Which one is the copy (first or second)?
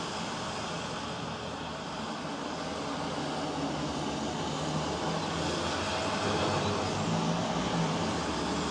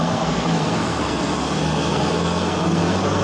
second